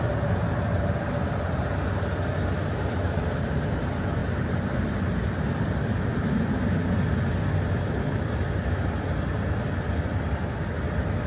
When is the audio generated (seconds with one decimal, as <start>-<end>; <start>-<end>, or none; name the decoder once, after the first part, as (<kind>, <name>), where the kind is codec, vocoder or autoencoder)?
none

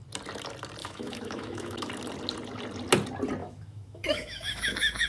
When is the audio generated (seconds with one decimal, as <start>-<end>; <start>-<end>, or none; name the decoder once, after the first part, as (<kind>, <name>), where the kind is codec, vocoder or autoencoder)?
0.8-1.9 (autoencoder, DAC-VAE); 3.4-5.1

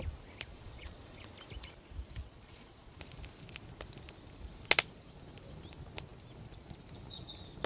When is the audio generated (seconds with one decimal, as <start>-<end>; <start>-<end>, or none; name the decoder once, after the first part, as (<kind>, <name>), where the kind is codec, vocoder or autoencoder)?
0.5-1.3 (vocoder, Vocos); 2.2-3.0

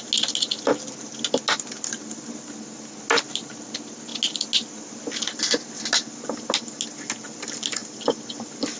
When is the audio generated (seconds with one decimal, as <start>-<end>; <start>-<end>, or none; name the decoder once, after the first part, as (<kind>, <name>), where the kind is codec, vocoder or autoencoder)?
none

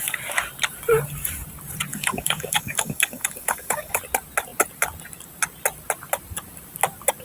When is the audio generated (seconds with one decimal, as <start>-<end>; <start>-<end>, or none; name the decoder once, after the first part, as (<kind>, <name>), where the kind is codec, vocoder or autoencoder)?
1.9-4.0 (codec, DAC)